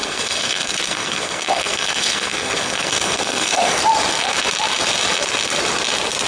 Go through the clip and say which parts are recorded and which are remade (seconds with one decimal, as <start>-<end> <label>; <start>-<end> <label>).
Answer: 0.0-3.8 remade; 3.8-6.3 recorded